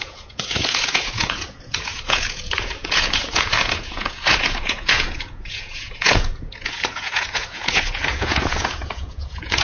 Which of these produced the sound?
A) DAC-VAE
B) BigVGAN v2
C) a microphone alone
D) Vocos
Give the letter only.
D